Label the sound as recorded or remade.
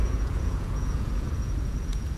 remade